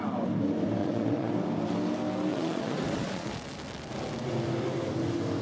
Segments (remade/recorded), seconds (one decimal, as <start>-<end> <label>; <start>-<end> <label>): 0.0-0.8 recorded; 0.8-1.3 remade; 1.3-2.3 recorded; 2.3-3.3 remade; 3.3-5.4 recorded